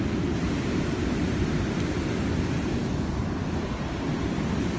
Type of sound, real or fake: real